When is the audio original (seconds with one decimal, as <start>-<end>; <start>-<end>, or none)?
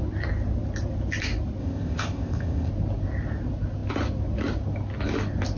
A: 0.0-1.6; 2.7-5.6